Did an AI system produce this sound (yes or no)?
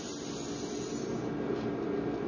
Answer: no